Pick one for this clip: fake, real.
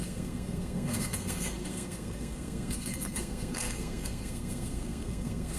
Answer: fake